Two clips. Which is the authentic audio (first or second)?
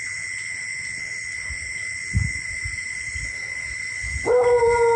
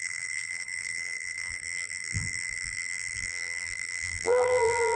first